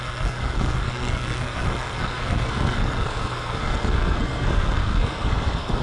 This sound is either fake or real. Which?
fake